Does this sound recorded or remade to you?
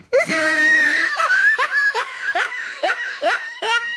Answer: remade